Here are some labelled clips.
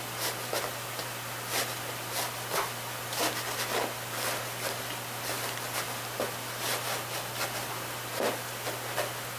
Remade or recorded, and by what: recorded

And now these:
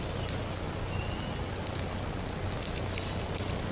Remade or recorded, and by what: recorded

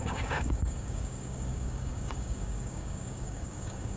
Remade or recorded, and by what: remade, codec, DAC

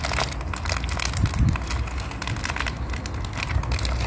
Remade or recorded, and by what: recorded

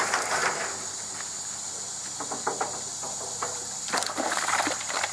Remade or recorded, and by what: recorded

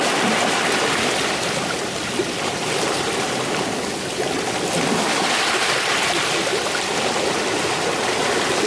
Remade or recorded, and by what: recorded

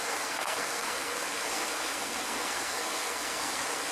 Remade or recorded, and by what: remade, codec, SNAC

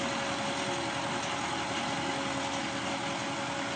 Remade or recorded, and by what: recorded